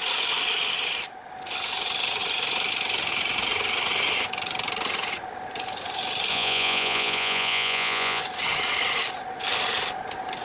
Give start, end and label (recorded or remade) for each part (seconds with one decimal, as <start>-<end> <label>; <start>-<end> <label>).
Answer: 0.0-6.3 recorded; 6.3-8.2 remade; 8.2-10.4 recorded